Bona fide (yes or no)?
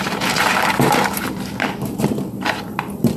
no